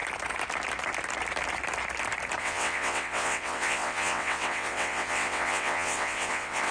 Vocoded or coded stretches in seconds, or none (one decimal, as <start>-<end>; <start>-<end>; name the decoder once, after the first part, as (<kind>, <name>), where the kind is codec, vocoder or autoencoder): 2.4-6.7 (vocoder, WaveNeXt)